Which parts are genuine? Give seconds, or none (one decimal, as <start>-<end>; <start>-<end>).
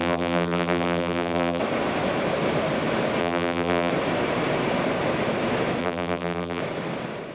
1.6-3.2; 3.9-5.8; 6.6-7.3